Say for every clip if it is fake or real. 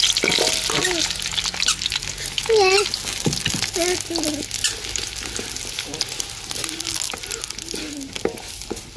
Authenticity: real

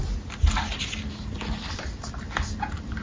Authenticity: real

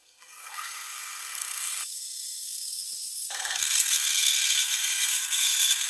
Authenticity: fake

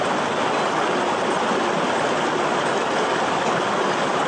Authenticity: real